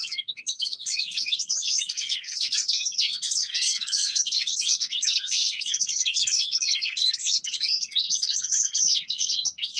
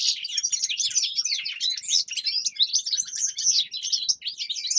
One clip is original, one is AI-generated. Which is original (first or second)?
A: second